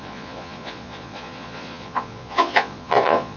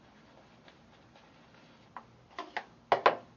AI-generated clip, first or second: first